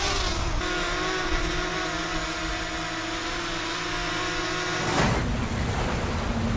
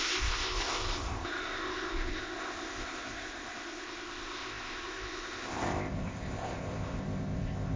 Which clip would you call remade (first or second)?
second